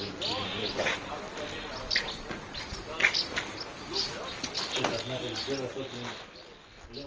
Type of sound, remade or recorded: recorded